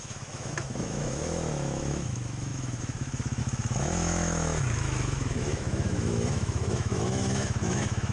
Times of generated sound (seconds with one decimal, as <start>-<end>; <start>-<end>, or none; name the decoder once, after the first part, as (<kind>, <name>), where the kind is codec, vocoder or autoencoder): 0.0-8.1 (autoencoder, DAC-VAE)